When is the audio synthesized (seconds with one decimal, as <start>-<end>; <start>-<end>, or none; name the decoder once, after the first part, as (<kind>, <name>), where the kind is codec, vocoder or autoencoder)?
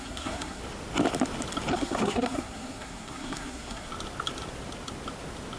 0.0-0.6 (codec, SNAC); 1.7-3.9